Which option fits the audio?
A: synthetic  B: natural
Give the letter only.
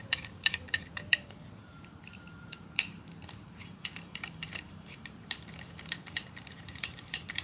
A